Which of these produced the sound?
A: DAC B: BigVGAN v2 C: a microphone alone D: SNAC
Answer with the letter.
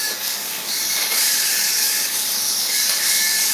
A